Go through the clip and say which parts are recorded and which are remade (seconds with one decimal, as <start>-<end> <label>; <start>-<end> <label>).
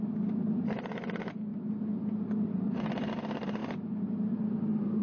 0.0-5.0 recorded